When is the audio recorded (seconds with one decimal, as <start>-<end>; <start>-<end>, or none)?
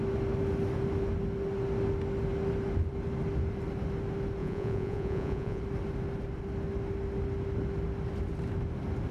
0.0-4.4; 5.6-9.1